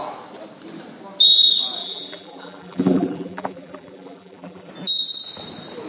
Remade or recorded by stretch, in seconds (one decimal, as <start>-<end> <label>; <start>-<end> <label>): 0.0-1.8 recorded; 1.8-4.7 remade; 4.7-5.9 recorded